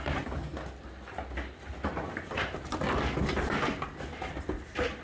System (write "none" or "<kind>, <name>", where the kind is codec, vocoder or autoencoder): none